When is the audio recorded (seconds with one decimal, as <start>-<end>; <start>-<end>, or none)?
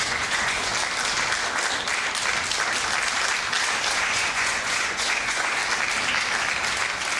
0.7-3.9; 5.6-7.2